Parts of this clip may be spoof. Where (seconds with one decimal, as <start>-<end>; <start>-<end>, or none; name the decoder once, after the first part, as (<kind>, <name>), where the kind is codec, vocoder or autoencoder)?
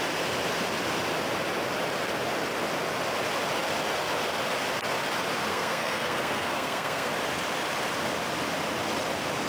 5.5-7.1 (codec, SNAC)